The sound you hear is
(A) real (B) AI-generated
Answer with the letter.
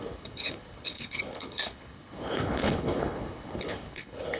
B